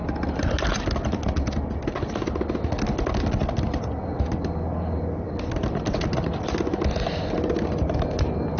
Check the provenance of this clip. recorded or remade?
recorded